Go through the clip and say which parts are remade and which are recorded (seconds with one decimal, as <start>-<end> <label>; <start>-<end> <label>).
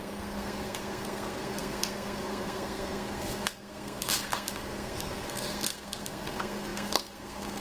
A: 0.0-7.6 remade